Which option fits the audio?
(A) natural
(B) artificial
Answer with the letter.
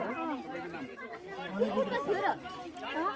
A